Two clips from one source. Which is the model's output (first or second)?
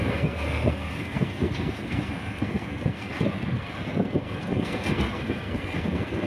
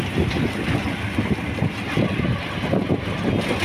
first